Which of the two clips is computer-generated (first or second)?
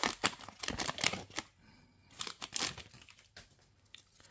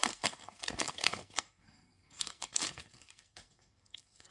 second